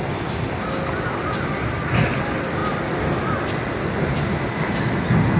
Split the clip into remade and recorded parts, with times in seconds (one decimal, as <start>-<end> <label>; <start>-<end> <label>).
0.0-5.4 recorded